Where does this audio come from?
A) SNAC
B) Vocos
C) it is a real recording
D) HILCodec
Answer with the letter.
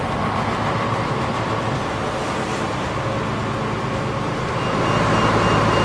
C